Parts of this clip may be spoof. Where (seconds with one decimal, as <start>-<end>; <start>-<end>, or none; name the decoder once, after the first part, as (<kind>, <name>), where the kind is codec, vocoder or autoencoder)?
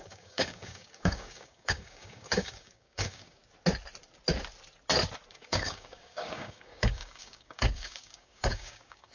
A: 0.0-3.4 (codec, DAC); 5.3-9.1